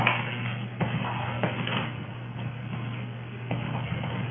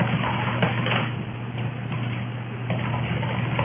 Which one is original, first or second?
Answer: second